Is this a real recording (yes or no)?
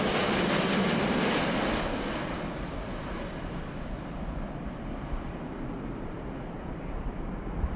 yes